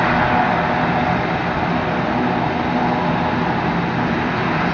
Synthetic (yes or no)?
no